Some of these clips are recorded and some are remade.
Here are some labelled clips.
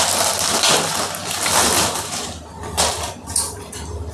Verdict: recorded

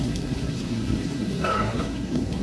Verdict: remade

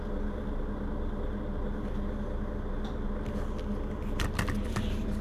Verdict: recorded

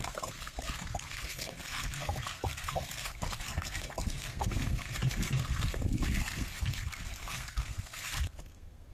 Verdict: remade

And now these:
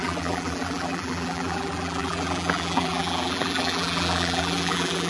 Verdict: remade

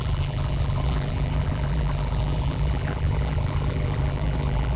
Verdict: remade